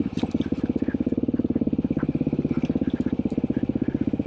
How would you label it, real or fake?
real